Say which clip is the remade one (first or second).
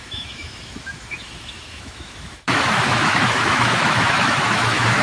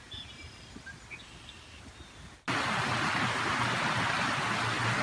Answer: first